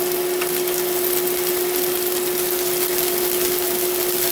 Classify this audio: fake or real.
real